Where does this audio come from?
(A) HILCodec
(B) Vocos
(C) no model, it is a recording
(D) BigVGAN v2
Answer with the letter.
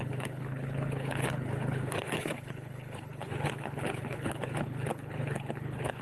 A